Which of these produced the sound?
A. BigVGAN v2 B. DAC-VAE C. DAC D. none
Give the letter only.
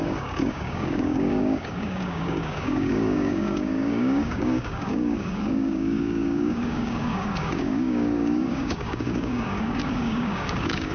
C